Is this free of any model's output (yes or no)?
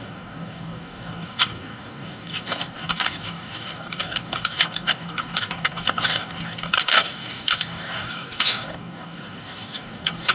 no